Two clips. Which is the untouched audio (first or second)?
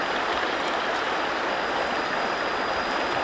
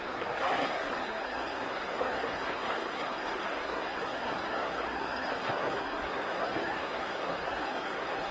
first